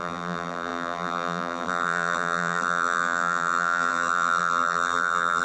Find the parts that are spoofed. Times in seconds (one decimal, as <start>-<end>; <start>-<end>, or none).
0.0-5.4